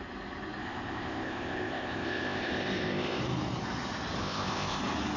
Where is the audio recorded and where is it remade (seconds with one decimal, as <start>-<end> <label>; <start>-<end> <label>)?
0.0-0.6 recorded; 0.6-3.2 remade; 3.2-4.2 recorded; 4.2-4.8 remade; 4.8-5.2 recorded